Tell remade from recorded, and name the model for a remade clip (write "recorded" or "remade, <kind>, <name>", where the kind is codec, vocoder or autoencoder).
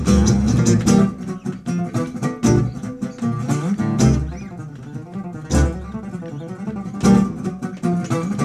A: recorded